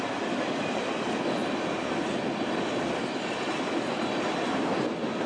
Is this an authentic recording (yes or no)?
yes